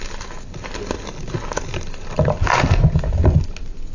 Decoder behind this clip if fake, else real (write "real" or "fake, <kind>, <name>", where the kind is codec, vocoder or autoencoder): real